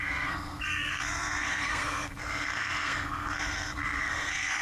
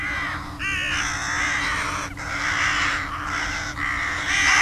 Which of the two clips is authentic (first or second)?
second